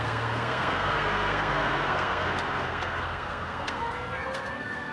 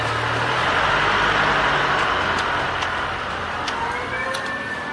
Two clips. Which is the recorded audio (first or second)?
second